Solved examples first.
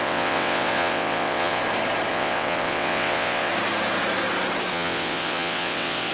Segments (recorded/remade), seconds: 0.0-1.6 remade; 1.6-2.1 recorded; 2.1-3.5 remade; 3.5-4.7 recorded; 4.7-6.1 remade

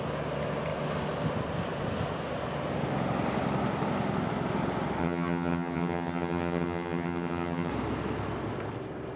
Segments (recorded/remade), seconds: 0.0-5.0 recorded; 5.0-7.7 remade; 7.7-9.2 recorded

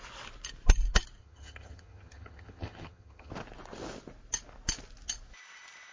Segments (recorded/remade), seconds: 0.0-1.2 recorded; 1.2-3.3 remade; 3.3-5.9 recorded

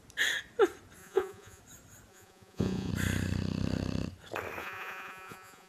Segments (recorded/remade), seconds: 0.0-1.0 recorded; 1.0-1.6 remade; 1.6-2.1 recorded; 2.1-2.9 remade; 2.9-4.6 recorded; 4.6-5.7 remade

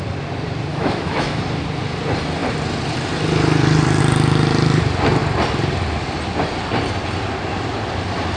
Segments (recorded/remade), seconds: 0.0-0.7 recorded; 0.7-1.4 remade; 1.4-8.4 recorded

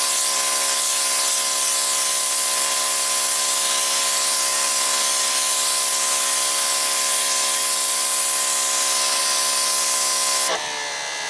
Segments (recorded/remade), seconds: 0.0-11.3 recorded